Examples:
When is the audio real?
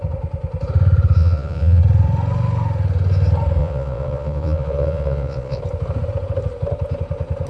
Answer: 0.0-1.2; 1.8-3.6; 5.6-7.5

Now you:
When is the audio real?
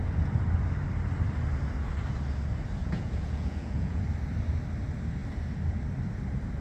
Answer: 0.0-2.8; 4.0-6.6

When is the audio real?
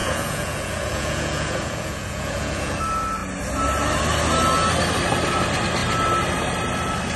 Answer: 2.8-7.2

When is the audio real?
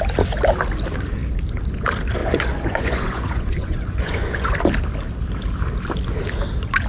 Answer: 0.0-2.2; 4.5-6.9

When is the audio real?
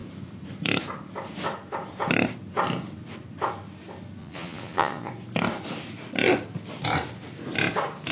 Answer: 0.0-4.2; 5.1-8.1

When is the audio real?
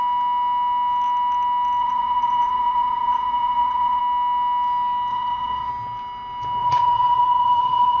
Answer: 0.0-1.8; 4.0-5.1; 5.7-6.6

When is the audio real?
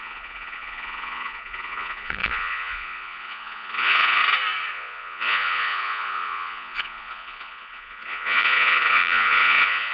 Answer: 4.2-4.7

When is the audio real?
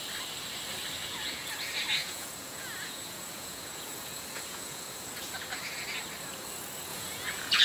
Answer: 0.0-1.0; 1.5-2.0; 5.8-6.9